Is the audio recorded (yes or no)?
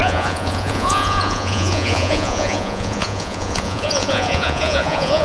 no